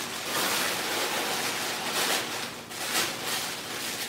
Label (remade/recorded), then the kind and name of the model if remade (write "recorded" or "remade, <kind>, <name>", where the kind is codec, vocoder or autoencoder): recorded